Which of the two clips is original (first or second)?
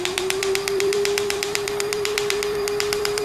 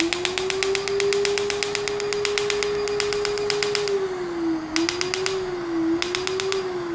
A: second